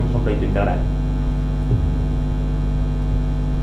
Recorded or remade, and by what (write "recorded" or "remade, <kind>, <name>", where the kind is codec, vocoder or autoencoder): recorded